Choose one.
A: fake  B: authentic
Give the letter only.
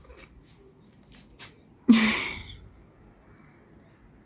B